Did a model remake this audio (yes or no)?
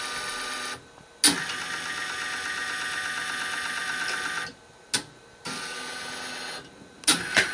no